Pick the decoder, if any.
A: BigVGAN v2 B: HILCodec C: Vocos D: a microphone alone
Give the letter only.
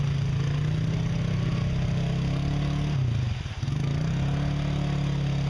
D